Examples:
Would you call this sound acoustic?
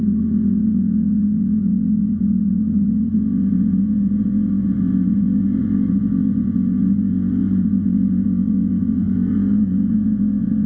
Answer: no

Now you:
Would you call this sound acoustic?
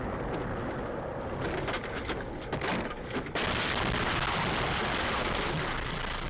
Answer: yes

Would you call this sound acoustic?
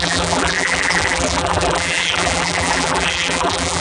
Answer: no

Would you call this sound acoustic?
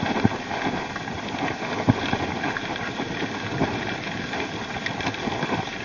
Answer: yes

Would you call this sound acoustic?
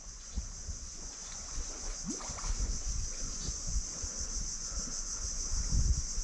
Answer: no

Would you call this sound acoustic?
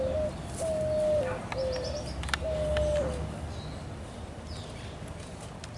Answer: yes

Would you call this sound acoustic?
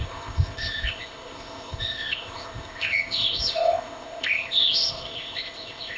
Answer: no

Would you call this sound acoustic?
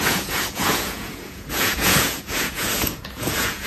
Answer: no